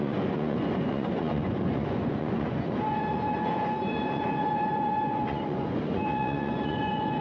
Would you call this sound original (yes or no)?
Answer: no